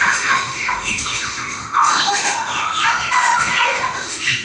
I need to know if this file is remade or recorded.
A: remade